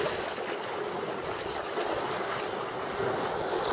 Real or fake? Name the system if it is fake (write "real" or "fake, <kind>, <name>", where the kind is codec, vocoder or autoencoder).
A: real